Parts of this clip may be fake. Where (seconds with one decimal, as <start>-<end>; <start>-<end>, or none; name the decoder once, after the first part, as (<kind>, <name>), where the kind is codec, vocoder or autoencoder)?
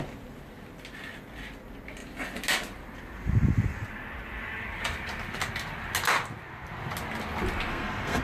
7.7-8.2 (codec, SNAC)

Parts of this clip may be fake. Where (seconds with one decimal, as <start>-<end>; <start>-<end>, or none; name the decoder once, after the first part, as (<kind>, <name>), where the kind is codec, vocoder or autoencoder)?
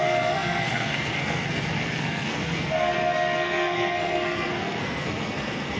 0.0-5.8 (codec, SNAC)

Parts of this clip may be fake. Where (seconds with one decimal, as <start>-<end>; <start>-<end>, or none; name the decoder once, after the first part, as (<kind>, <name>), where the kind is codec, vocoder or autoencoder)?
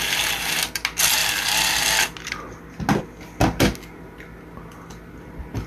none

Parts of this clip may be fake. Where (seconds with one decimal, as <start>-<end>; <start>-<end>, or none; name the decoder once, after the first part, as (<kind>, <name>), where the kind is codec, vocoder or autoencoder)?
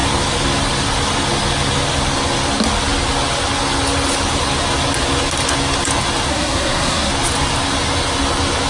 6.3-7.1 (codec, SNAC)